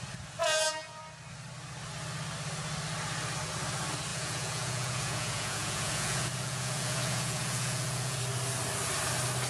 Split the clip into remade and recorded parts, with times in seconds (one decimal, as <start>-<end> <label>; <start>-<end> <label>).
0.0-0.4 recorded; 0.4-1.0 remade; 1.0-4.1 recorded; 4.1-8.2 remade; 8.2-9.5 recorded

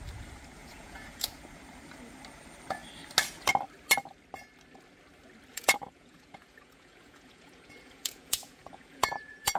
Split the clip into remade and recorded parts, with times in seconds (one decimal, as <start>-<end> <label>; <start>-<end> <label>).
0.0-0.6 recorded; 0.6-1.3 remade; 1.3-5.5 recorded; 5.5-9.6 remade

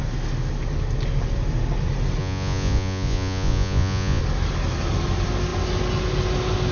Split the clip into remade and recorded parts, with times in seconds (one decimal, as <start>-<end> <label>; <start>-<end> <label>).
0.0-2.2 recorded; 2.2-4.2 remade; 4.2-6.7 recorded

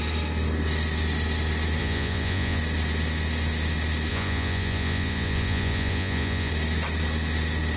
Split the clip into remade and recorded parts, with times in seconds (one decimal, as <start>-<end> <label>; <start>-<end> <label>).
0.0-1.8 recorded; 1.8-2.6 remade; 2.6-4.1 recorded; 4.1-6.5 remade; 6.5-7.8 recorded

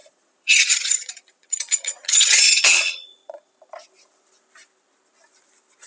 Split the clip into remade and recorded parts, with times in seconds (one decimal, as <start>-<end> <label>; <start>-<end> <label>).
0.0-3.5 remade; 3.5-5.9 recorded

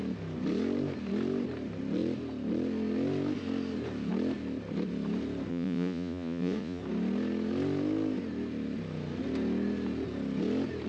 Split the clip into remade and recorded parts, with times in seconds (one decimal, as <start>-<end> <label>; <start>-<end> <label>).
0.0-5.5 recorded; 5.5-6.8 remade; 6.8-10.9 recorded

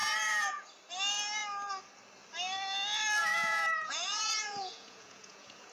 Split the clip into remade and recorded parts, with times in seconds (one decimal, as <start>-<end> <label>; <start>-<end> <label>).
0.0-0.7 remade; 0.7-3.2 recorded; 3.2-5.7 remade

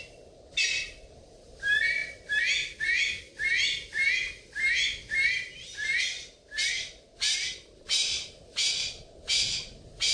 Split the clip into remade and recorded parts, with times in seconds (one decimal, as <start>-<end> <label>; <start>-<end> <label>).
0.0-10.1 recorded